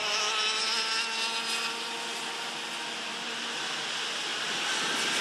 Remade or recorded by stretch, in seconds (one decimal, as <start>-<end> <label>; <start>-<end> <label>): 0.0-5.2 recorded